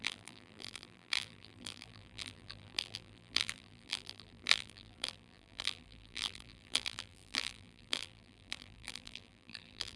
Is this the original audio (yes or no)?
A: no